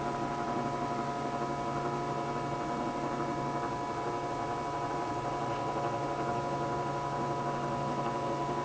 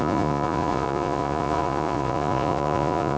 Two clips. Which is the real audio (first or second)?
first